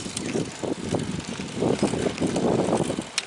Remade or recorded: recorded